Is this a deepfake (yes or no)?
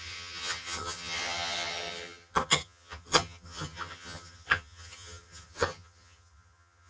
yes